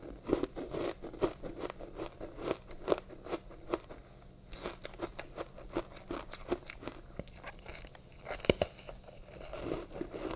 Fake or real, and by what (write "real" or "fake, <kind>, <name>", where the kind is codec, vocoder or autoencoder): real